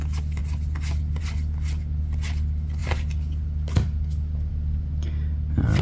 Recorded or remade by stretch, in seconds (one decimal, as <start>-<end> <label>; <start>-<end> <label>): 0.0-5.8 recorded